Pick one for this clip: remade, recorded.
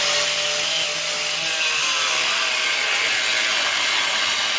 recorded